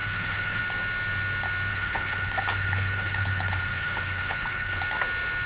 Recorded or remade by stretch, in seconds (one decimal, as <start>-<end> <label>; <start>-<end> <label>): 0.0-0.6 remade; 0.6-1.7 recorded; 1.7-4.8 remade; 4.8-5.5 recorded